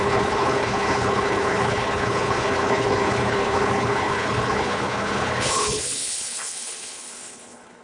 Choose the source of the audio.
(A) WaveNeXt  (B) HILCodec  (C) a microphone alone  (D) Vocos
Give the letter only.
B